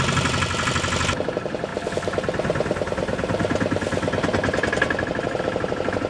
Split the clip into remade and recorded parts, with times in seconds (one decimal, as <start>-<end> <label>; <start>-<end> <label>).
0.0-6.1 recorded